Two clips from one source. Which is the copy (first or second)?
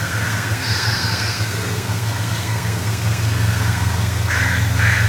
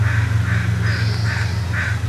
first